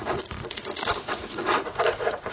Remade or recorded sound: remade